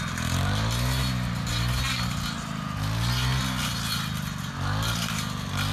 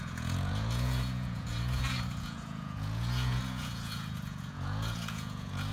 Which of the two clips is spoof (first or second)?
second